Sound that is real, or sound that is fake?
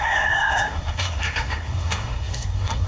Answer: fake